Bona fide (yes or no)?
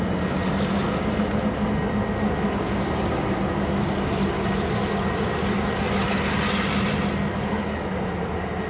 yes